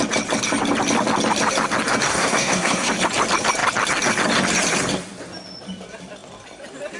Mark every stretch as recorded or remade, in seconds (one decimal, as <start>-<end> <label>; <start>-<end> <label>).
0.0-2.1 recorded; 2.1-2.9 remade; 2.9-7.0 recorded